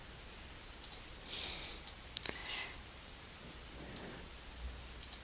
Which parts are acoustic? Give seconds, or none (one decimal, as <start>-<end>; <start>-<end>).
0.0-2.4; 3.4-5.2